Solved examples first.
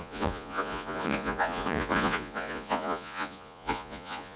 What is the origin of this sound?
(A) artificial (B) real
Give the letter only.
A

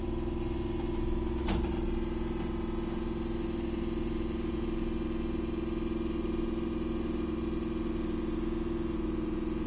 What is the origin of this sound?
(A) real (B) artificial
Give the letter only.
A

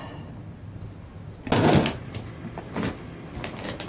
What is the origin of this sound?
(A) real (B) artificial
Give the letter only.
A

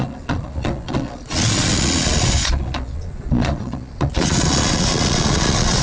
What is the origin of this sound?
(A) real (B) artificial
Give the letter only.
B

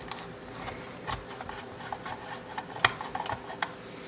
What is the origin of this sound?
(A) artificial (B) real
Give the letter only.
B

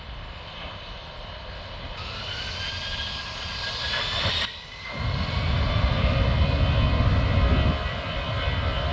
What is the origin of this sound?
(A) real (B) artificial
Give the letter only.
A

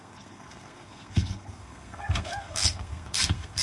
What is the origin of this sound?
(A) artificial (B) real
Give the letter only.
A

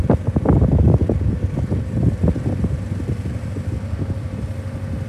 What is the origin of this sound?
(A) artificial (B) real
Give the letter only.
B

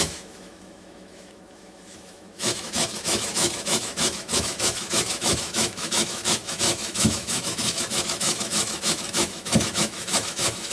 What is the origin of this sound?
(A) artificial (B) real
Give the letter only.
A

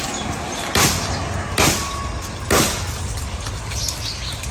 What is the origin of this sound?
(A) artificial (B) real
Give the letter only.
B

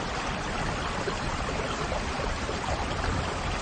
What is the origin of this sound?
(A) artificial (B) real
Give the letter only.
B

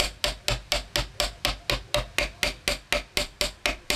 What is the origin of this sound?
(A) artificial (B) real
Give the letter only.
B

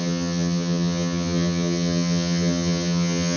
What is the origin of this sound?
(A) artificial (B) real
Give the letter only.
A